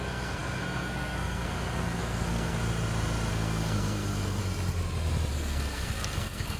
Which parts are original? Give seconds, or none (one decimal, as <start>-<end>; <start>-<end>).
2.6-3.3; 4.4-5.3